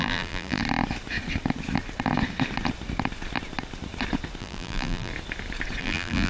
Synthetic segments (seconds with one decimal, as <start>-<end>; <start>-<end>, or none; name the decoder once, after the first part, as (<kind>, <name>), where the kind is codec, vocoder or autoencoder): 0.0-0.6 (vocoder, BigVGAN v2); 4.4-5.1; 5.8-6.3